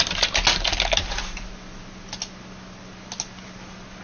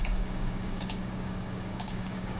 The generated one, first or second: second